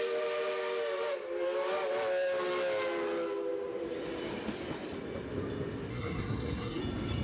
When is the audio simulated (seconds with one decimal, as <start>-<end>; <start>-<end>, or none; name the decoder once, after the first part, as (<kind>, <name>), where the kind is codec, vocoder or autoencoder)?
5.9-6.8 (codec, SNAC)